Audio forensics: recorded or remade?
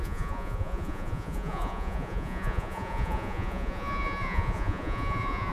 remade